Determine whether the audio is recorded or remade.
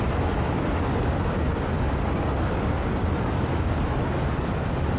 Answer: recorded